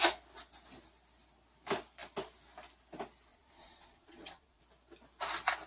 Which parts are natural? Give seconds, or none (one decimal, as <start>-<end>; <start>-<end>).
0.0-3.3; 4.6-5.7